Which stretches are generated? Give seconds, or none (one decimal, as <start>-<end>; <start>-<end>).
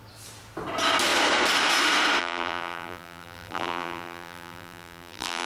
2.2-5.5